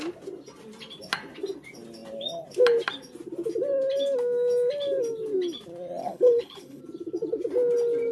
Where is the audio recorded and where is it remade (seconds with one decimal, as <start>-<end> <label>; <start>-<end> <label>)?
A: 0.0-6.0 recorded; 6.0-6.8 remade; 6.8-8.1 recorded

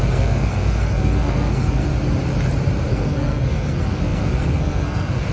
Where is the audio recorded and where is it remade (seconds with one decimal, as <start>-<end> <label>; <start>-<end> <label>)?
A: 0.0-1.9 remade; 1.9-2.9 recorded; 2.9-5.3 remade